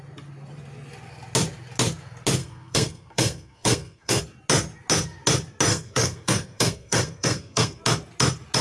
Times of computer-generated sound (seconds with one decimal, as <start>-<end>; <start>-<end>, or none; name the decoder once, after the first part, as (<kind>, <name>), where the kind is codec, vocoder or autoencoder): 2.4-4.2 (codec, SNAC); 5.7-7.8